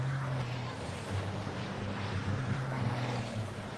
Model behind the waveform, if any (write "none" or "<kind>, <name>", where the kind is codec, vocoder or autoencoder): vocoder, BigVGAN v2